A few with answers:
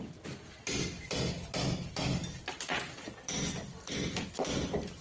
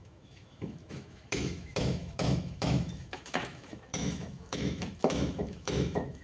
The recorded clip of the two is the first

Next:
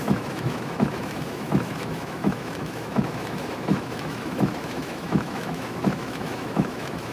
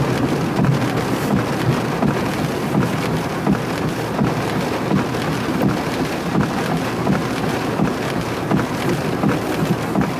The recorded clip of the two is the second